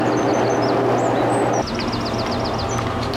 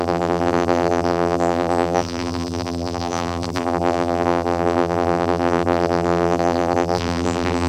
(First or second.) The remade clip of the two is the second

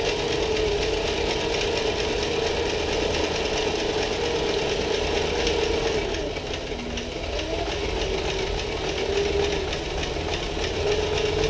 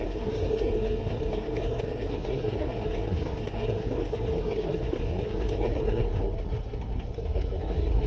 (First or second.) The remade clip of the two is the second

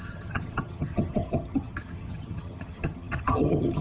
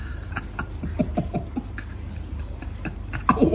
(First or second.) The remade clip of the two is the first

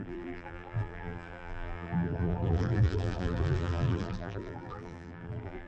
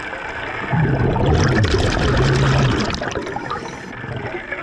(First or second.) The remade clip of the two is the first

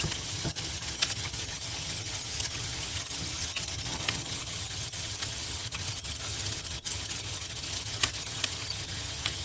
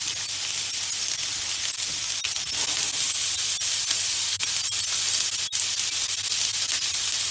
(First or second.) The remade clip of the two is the first